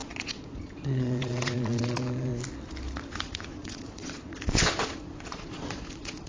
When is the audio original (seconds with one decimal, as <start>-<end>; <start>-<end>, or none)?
2.3-3.0